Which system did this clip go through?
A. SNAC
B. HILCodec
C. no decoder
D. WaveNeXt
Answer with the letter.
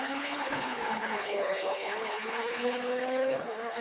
B